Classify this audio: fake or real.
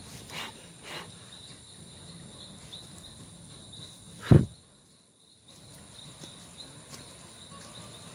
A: real